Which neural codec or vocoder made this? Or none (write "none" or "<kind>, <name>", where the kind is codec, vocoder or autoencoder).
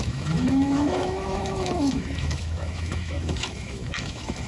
autoencoder, DAC-VAE